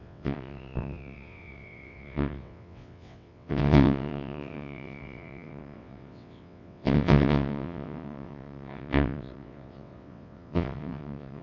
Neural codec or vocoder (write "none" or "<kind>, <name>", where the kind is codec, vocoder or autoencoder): vocoder, WaveNeXt